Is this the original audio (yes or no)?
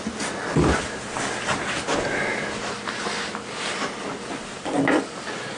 yes